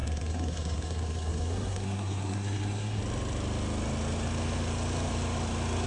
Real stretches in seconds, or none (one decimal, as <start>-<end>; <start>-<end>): 3.0-5.9